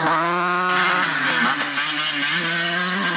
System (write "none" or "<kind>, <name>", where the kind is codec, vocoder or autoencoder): none